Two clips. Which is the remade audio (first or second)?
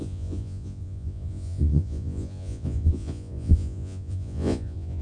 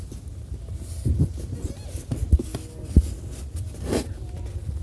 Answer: first